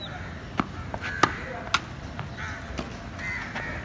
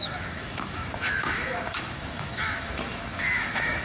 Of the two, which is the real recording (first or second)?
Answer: first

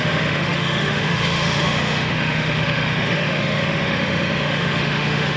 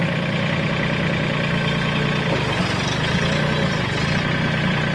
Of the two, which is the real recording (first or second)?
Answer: second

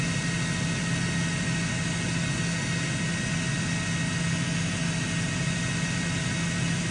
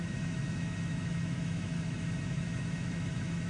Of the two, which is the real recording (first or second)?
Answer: first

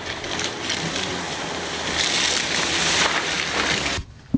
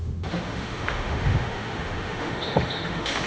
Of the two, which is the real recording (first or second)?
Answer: first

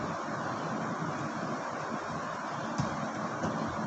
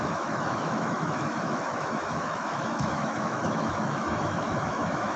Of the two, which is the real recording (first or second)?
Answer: first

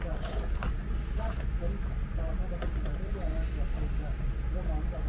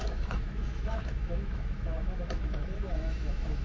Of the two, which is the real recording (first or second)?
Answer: first